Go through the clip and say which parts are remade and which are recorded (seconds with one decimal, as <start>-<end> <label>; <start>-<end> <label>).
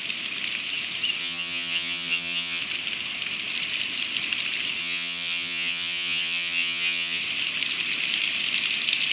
0.0-1.2 recorded; 1.2-2.6 remade; 2.6-4.8 recorded; 4.8-7.2 remade; 7.2-9.1 recorded